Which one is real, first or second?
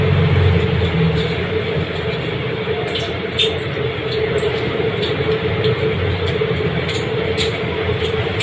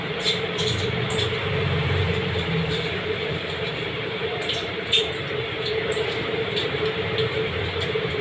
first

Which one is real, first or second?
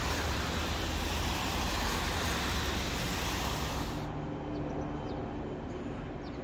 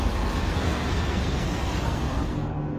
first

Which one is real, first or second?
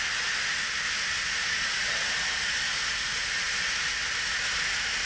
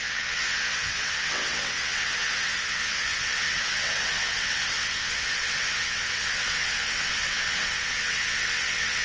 first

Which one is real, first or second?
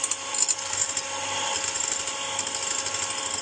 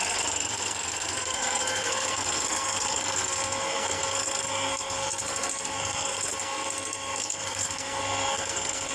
first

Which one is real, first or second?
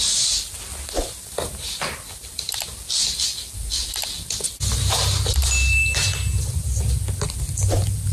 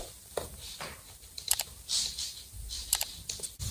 first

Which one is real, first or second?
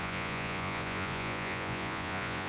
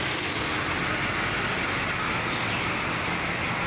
second